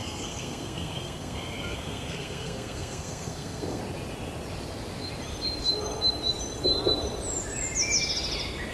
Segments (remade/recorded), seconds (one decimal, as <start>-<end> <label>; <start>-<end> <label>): 0.0-3.8 remade; 3.8-8.7 recorded